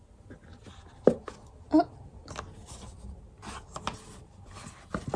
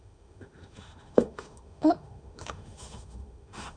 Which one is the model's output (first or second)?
second